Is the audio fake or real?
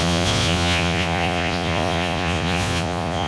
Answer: fake